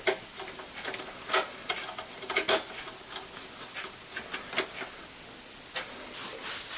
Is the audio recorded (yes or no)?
yes